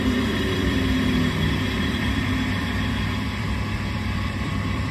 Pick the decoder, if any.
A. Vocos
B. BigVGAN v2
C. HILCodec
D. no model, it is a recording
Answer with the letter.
B